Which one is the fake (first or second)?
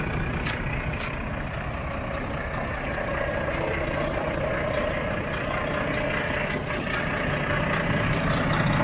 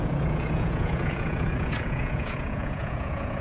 second